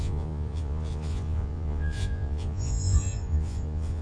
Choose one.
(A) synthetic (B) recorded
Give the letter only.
A